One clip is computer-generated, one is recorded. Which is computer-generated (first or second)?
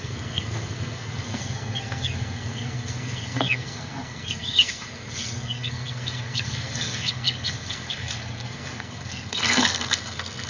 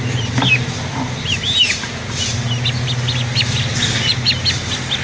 first